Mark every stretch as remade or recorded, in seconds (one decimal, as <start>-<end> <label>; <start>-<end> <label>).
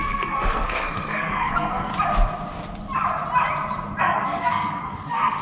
0.0-1.9 remade; 1.9-4.0 recorded; 4.0-5.4 remade